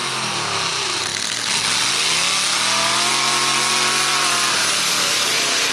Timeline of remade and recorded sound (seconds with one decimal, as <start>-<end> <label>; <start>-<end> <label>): 0.0-1.1 remade; 1.1-4.5 recorded; 4.5-5.7 remade